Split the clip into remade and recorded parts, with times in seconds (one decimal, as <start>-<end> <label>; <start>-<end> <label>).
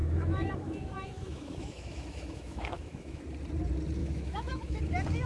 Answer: 0.0-3.2 remade; 3.2-4.0 recorded; 4.0-4.8 remade; 4.8-5.3 recorded